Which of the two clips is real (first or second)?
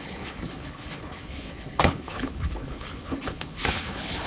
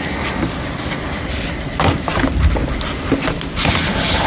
second